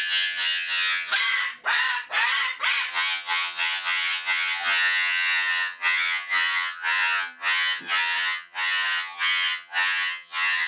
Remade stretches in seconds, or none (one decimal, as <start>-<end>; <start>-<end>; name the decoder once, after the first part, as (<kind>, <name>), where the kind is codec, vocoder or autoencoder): 0.0-1.1 (vocoder, HiFi-GAN); 2.9-10.7